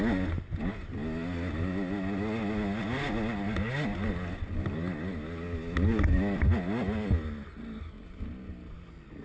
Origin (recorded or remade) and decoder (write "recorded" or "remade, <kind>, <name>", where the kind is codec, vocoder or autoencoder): recorded